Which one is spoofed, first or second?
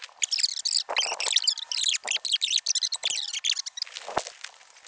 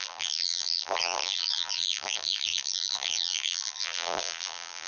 second